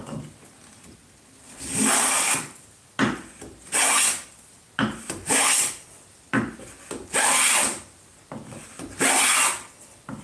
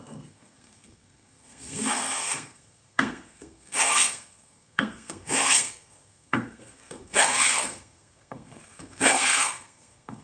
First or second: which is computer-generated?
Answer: second